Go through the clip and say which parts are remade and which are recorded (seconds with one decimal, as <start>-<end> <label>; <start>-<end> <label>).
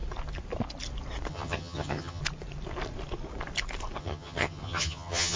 0.0-1.3 recorded; 1.3-2.2 remade; 2.2-4.0 recorded; 4.0-5.4 remade